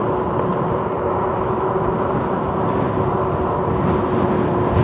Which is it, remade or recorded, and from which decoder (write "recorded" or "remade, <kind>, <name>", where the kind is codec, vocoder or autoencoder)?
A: recorded